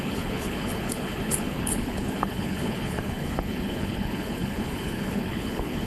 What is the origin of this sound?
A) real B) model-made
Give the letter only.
B